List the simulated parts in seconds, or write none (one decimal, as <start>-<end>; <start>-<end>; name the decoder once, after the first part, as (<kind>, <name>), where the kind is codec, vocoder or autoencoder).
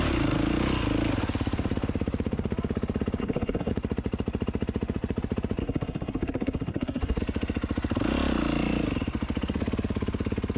3.2-3.7 (codec, SNAC); 5.6-7.2